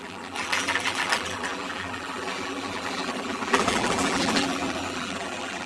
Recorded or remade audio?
remade